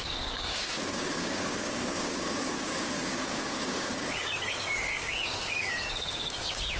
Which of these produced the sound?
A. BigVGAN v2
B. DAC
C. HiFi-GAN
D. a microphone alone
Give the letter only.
B